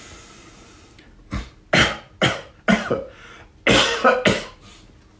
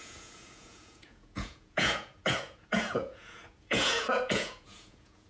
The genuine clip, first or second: first